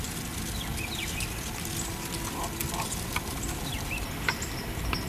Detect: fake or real real